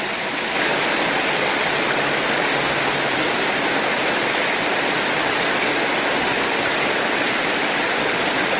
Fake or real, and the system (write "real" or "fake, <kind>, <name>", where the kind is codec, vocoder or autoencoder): real